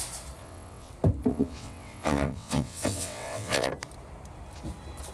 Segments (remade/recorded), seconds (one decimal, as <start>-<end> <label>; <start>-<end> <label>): 0.0-0.4 recorded; 0.4-0.9 remade; 0.9-1.3 recorded; 1.3-3.7 remade; 3.7-5.1 recorded